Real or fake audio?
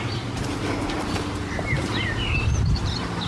fake